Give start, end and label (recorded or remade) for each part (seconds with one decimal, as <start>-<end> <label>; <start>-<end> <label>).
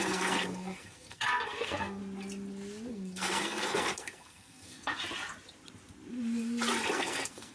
0.0-2.0 remade; 2.0-2.9 recorded; 2.9-5.0 remade; 5.0-6.9 recorded; 6.9-7.5 remade